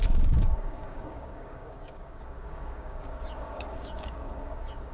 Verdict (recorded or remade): remade